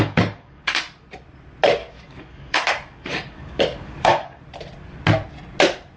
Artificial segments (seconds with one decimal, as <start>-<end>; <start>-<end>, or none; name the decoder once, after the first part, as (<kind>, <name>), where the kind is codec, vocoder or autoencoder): 0.0-0.8 (codec, DAC); 1.8-4.4